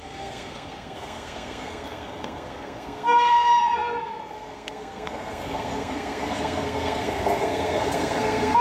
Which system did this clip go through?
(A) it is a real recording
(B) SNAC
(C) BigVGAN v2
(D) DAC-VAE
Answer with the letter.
B